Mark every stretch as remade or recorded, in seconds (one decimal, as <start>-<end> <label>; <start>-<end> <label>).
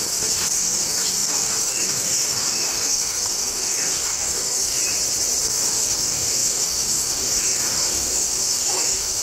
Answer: 0.0-4.8 remade; 4.8-5.4 recorded; 5.4-9.2 remade